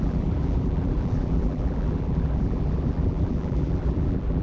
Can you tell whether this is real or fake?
fake